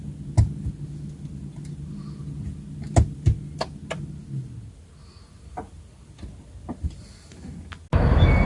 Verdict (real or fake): real